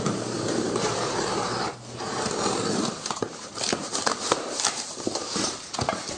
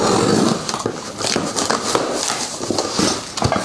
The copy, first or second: first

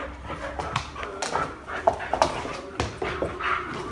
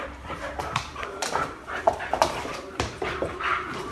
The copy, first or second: second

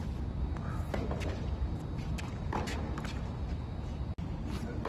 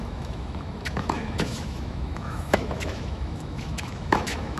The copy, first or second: second